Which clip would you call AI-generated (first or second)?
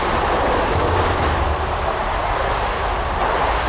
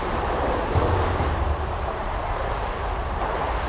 second